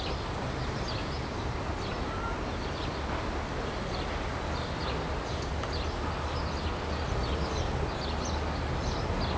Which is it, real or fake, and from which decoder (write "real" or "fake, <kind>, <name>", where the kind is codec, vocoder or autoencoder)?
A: real